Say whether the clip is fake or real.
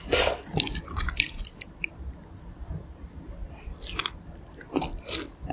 real